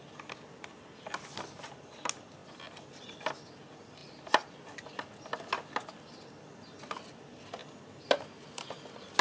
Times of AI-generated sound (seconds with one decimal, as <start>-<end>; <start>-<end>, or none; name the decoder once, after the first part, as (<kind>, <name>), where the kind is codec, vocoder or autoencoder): none